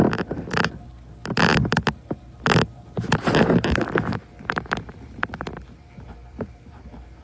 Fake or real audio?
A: real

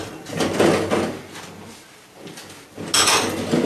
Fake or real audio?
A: real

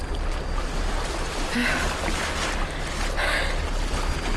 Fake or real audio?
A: real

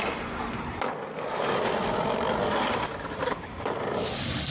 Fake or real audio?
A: real